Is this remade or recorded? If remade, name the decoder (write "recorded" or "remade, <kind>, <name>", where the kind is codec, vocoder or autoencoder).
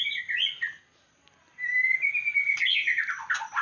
recorded